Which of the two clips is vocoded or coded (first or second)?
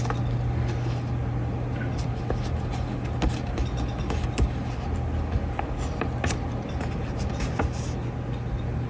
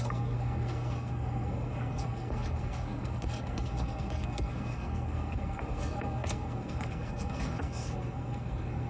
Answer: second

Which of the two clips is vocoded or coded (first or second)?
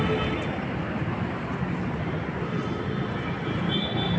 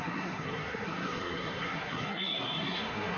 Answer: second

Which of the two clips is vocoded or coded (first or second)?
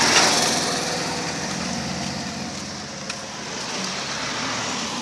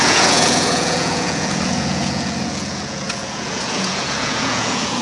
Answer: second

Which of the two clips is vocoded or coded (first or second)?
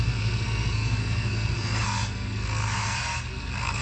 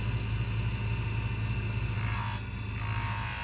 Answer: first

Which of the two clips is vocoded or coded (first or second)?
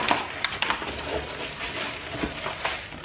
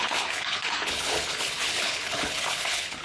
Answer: second